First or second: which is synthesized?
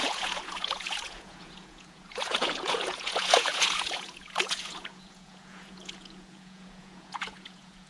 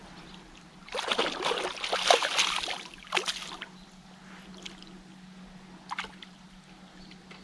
first